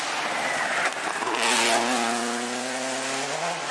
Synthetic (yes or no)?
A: no